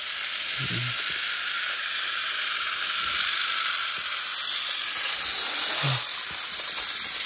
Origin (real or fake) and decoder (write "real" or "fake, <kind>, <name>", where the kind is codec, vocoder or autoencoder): real